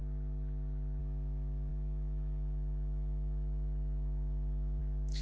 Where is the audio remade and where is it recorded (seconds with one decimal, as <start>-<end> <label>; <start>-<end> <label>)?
0.0-1.0 recorded; 1.0-5.2 remade

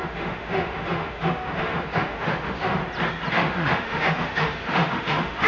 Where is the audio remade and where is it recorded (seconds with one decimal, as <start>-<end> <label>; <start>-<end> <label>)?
0.0-2.8 remade; 2.8-3.3 recorded; 3.3-5.5 remade